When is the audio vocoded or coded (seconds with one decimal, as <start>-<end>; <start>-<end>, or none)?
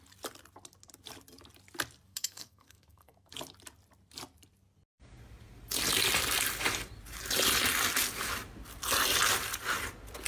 2.1-3.3